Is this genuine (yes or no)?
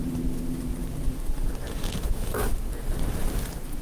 no